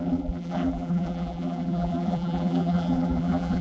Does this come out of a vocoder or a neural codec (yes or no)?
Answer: yes